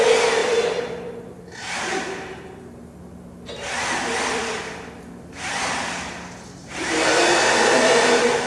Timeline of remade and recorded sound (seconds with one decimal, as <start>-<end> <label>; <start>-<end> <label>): 0.0-8.5 recorded